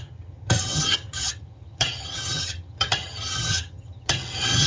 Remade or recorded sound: remade